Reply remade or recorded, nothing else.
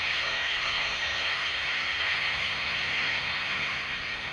remade